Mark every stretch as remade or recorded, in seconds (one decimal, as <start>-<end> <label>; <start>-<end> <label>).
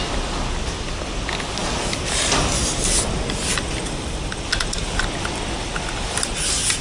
0.0-6.8 recorded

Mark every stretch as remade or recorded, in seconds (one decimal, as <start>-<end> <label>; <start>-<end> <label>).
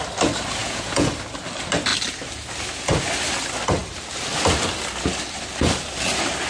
0.0-0.6 recorded; 0.6-1.1 remade; 1.1-6.5 recorded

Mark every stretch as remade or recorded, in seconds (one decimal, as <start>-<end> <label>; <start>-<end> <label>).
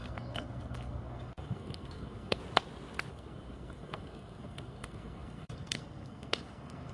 0.0-2.4 remade; 2.4-3.1 recorded; 3.1-6.9 remade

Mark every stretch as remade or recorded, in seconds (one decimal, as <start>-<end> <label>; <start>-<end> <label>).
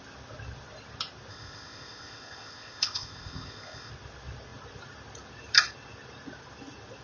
0.0-1.3 recorded; 1.3-3.9 remade; 3.9-7.0 recorded